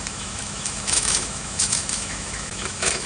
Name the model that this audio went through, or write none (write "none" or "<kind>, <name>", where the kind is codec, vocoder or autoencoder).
autoencoder, DAC-VAE